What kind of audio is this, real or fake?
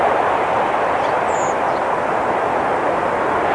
real